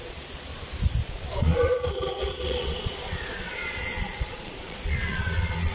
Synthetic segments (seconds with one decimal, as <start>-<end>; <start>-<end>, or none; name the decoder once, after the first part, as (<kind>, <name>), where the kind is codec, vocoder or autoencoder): 0.0-0.5 (vocoder, Vocos); 1.1-5.7